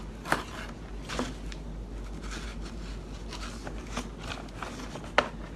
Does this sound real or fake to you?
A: real